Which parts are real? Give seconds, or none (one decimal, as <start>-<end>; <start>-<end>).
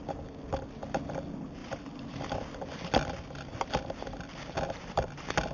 0.0-1.6; 2.3-5.5